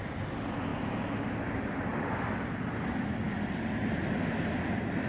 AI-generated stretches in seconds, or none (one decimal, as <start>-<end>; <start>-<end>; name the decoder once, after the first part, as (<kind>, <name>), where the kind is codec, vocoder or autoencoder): 0.7-1.5 (vocoder, BigVGAN v2); 1.9-5.1